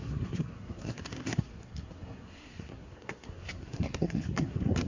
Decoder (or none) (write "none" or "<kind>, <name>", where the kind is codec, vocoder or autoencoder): codec, SNAC